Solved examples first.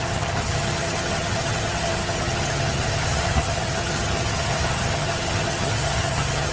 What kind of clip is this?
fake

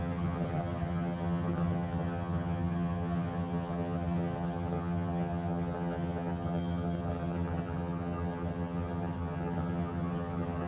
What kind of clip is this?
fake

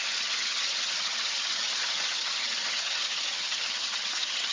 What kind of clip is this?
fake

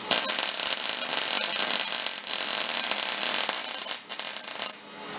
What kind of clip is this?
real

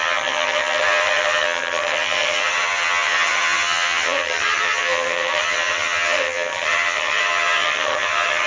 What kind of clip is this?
fake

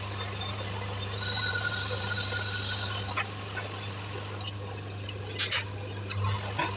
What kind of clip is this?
real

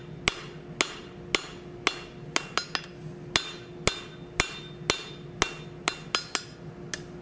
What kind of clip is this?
real